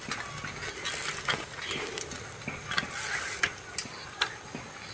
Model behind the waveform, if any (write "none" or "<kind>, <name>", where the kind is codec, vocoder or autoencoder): none